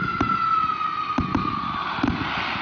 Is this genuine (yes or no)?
yes